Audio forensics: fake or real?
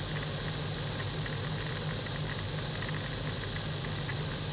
real